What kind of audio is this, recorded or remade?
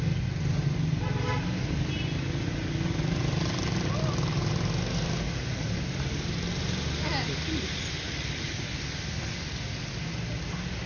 recorded